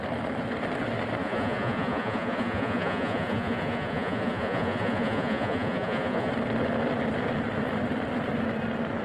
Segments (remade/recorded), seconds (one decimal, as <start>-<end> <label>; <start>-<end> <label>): 0.0-1.2 recorded; 1.2-6.3 remade; 6.3-9.0 recorded